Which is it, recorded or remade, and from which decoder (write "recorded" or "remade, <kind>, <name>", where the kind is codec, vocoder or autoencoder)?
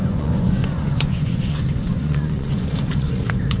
remade, vocoder, Vocos